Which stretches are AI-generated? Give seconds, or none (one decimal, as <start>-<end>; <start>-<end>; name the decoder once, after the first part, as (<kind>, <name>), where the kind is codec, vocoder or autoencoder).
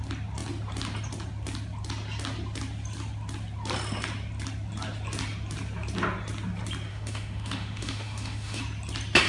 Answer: 6.9-8.6 (autoencoder, DAC-VAE)